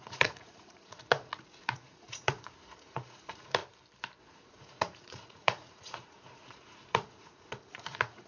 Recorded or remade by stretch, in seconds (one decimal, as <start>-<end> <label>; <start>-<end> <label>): 0.0-3.6 remade; 3.6-4.2 recorded; 4.2-8.3 remade

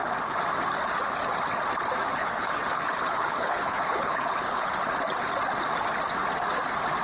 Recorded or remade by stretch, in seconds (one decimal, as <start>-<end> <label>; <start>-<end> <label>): 0.0-2.1 recorded; 2.1-4.8 remade; 4.8-7.0 recorded